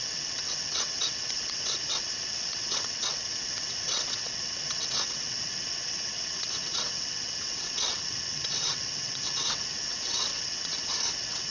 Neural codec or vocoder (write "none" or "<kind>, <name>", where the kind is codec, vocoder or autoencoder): vocoder, WaveNeXt